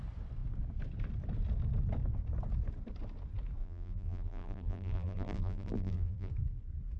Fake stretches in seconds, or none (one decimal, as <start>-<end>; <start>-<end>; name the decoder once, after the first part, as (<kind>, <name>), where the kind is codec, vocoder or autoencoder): 3.6-6.3 (vocoder, BigVGAN v2)